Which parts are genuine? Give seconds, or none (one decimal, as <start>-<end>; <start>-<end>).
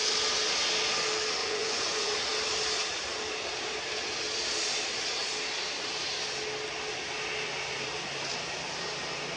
0.0-1.4; 2.3-9.4